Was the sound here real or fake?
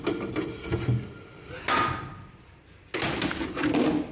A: real